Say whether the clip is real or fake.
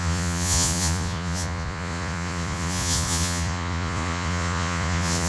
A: fake